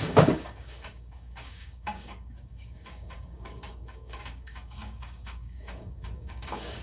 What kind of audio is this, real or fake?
fake